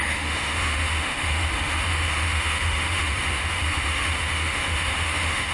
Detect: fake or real fake